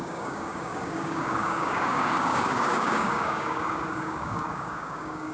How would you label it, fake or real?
fake